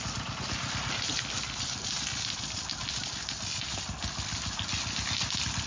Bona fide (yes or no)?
yes